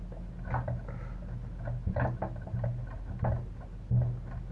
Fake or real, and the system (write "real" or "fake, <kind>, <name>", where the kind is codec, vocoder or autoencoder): real